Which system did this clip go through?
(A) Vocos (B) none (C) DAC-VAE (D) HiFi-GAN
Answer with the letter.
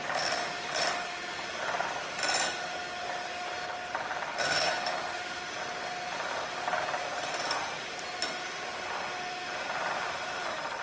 B